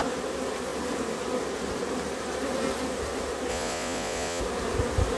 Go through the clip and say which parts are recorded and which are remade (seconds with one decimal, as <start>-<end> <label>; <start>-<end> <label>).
0.0-3.5 recorded; 3.5-4.4 remade; 4.4-5.2 recorded